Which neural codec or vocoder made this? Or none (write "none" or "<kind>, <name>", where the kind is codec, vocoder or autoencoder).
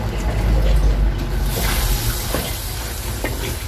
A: none